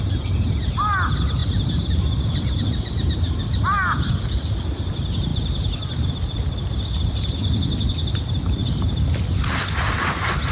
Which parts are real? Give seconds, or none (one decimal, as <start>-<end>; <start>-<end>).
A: 0.0-10.5